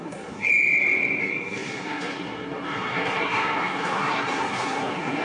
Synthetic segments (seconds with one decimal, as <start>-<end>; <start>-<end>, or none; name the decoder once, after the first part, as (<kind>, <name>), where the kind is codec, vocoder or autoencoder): 0.0-0.5 (codec, SNAC); 1.2-5.2